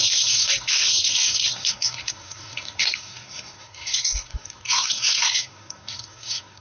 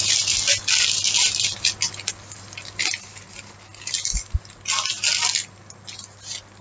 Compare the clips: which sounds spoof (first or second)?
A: first